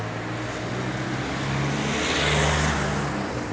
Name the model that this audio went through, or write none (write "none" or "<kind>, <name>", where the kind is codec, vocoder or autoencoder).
none